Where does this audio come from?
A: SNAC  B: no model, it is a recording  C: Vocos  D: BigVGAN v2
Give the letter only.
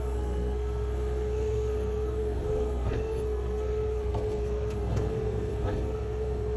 A